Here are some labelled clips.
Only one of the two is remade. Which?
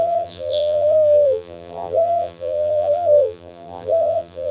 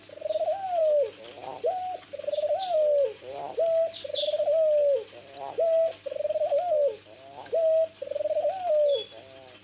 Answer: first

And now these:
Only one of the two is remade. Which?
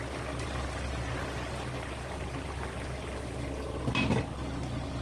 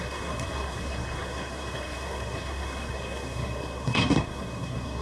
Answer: second